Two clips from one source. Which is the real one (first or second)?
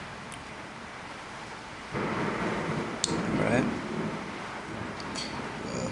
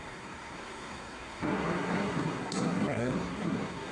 first